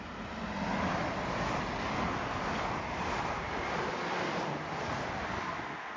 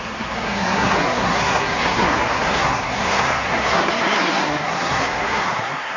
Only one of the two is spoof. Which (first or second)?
second